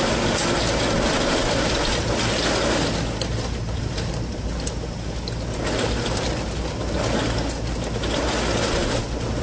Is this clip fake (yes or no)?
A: no